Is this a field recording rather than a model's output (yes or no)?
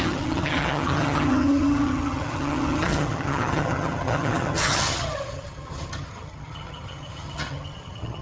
no